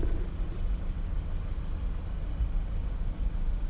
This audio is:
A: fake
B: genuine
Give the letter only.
B